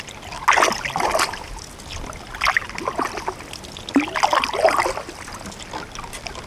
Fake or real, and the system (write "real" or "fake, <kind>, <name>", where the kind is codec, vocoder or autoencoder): real